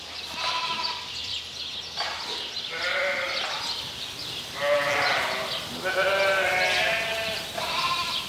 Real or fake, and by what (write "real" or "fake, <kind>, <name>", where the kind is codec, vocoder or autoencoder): real